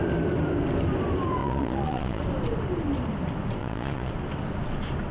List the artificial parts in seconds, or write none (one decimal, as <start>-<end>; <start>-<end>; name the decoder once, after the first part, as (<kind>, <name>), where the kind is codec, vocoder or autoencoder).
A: 1.4-2.2 (vocoder, Vocos); 3.6-4.1

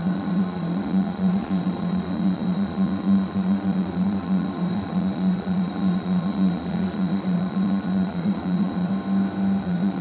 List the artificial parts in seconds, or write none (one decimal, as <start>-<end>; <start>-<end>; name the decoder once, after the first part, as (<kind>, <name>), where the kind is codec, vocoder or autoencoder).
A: 0.0-8.9 (vocoder, Vocos); 9.6-10.0